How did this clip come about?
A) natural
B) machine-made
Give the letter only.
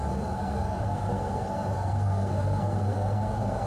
B